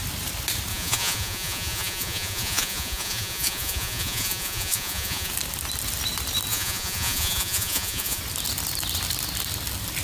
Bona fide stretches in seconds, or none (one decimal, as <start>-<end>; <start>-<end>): 0.0-0.7; 5.3-6.5; 8.2-10.0